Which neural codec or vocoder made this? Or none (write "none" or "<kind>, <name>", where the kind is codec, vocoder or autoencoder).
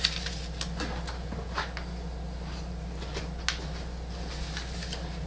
none